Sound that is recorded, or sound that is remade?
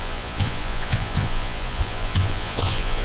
remade